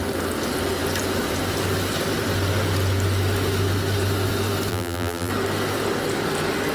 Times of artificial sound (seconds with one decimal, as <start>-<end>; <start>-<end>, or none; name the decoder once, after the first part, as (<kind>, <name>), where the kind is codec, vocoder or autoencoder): 4.7-5.3 (vocoder, BigVGAN v2)

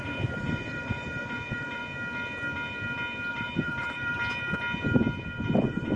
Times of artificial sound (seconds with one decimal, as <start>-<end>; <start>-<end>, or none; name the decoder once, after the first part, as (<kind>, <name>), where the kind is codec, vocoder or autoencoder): 0.0-1.8 (vocoder, BigVGAN v2); 3.3-4.2; 5.5-6.0

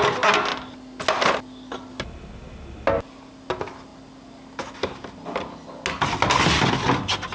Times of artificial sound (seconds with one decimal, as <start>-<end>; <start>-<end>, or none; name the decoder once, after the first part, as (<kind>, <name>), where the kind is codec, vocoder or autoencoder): none

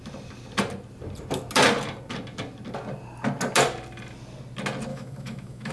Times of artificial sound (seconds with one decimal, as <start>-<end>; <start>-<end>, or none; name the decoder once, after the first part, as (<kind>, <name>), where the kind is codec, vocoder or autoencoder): 4.9-5.7 (autoencoder, DAC-VAE)

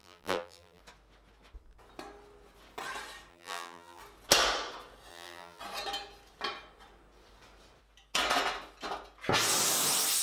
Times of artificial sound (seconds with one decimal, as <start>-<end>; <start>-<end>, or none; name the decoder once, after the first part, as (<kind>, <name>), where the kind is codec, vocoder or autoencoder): 0.0-0.8 (vocoder, BigVGAN v2); 3.3-4.0; 5.1-5.6

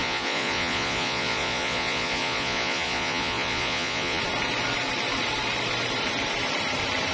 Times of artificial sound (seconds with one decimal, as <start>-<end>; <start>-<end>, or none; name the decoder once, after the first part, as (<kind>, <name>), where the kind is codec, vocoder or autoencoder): 0.0-4.2 (vocoder, Vocos)

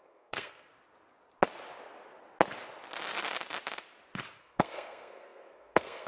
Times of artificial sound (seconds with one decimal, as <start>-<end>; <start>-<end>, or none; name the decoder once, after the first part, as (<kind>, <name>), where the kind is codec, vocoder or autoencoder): 0.0-0.7 (codec, SNAC); 4.4-6.1

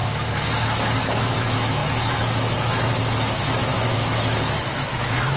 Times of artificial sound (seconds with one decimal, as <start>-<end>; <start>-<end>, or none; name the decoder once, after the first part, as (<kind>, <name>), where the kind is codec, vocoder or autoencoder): 1.0-5.4 (autoencoder, DAC-VAE)